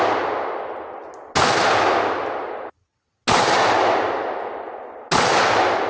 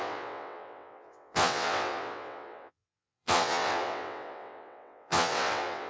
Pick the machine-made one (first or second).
second